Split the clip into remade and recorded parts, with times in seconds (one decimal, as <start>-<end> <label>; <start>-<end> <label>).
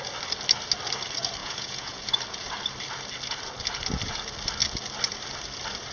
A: 0.0-1.4 recorded; 1.4-2.0 remade; 2.0-5.9 recorded